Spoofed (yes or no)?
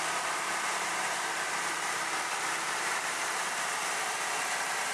yes